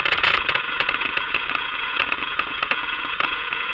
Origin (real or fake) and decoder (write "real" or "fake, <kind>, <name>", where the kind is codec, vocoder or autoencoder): fake, vocoder, Vocos